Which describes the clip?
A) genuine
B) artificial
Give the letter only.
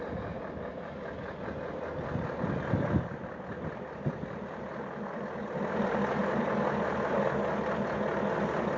A